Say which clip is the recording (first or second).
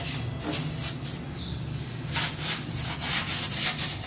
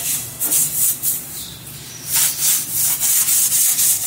first